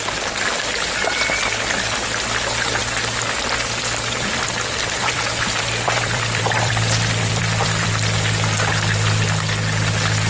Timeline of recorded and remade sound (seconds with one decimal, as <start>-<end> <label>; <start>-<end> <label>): 0.0-2.8 recorded; 2.8-7.9 remade; 7.9-10.3 recorded